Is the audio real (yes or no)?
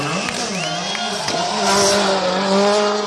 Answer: yes